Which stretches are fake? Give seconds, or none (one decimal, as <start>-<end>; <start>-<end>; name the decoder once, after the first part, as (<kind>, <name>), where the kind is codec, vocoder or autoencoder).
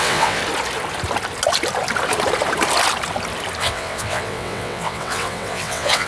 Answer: 0.0-0.4 (vocoder, WaveNeXt); 3.6-6.1